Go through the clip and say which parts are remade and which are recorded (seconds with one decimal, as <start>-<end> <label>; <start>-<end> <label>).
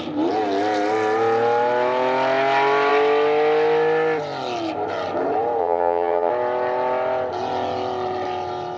0.0-5.6 recorded; 5.6-6.3 remade; 6.3-8.8 recorded